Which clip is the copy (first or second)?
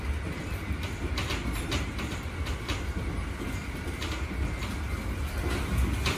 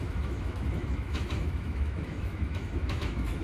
second